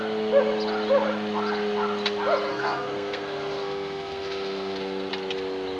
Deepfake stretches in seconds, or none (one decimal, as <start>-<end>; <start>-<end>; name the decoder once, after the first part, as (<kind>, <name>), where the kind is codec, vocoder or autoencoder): 2.5-5.1 (codec, SNAC)